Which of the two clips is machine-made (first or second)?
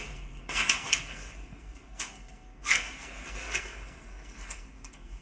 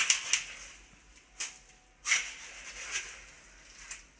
first